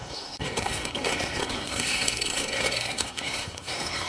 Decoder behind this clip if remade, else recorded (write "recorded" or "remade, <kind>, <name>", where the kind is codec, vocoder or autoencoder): remade, codec, SNAC